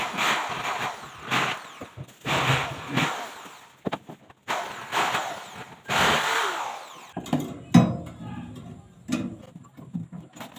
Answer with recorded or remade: recorded